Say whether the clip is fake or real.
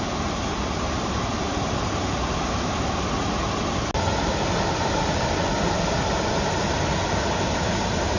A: real